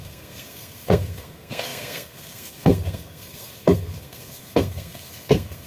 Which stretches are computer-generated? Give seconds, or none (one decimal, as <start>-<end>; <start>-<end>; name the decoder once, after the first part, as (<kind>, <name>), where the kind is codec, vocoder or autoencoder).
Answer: 0.0-5.7 (codec, SNAC)